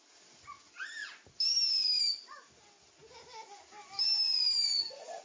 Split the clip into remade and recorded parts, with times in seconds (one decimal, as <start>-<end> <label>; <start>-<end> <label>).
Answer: 0.0-4.3 recorded; 4.3-5.2 remade